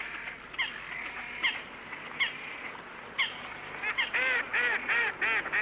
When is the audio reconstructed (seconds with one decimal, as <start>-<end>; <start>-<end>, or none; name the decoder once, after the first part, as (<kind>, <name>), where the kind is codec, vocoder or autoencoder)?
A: none